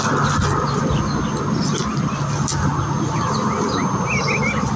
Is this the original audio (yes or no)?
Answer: yes